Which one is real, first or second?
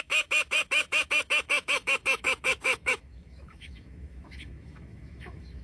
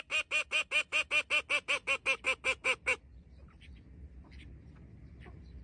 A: second